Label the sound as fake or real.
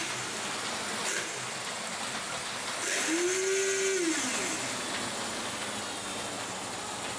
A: real